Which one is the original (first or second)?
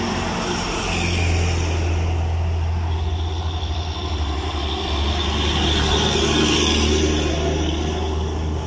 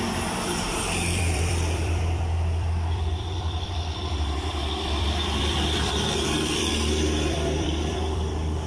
first